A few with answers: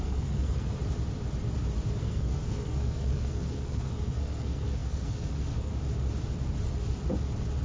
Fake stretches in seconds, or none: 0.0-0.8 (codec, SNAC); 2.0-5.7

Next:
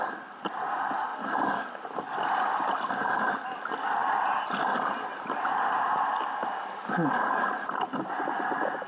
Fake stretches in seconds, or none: none

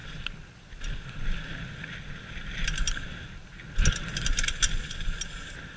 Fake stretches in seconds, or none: none